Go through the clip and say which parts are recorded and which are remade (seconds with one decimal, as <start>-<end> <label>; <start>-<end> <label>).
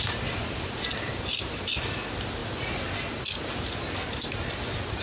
0.0-5.0 recorded